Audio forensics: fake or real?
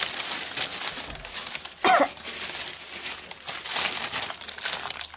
real